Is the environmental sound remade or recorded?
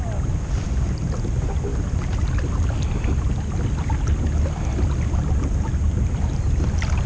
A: recorded